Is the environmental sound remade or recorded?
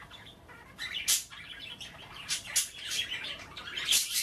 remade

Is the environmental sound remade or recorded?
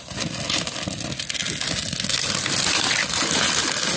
recorded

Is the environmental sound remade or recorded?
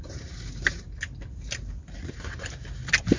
recorded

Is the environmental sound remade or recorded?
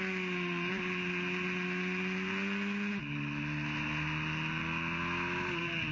recorded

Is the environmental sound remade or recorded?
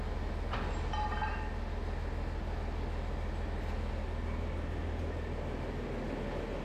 recorded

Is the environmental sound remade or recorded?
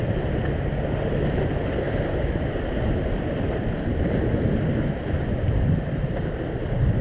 recorded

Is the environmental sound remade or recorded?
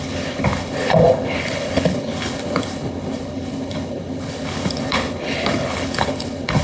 remade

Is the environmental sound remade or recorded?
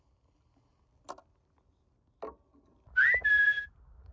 recorded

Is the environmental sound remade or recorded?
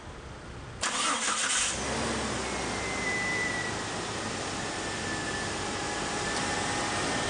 recorded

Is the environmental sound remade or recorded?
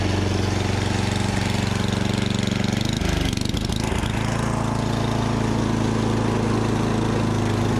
recorded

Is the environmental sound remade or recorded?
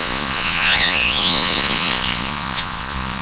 remade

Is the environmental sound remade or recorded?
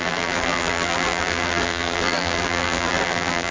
remade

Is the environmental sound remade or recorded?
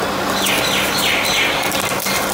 recorded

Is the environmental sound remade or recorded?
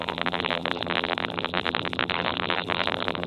remade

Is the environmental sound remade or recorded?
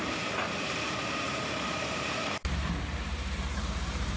remade